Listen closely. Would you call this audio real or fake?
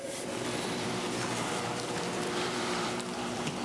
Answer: fake